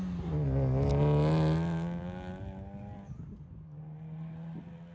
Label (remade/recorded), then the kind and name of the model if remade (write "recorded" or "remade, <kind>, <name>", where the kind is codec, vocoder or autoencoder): recorded